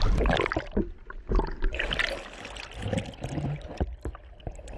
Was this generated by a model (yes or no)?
yes